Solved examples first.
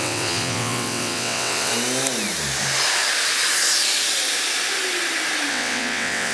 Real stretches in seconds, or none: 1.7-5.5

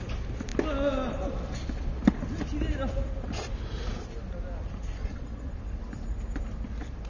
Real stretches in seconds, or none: 0.0-5.0; 5.5-7.1

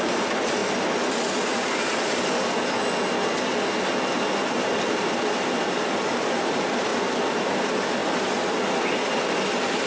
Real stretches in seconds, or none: 0.6-4.5; 6.9-7.6; 8.0-9.5

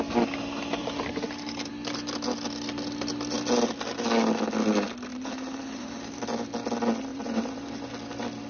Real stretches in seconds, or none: 0.0-0.8; 1.7-5.1; 6.2-7.1; 7.9-8.5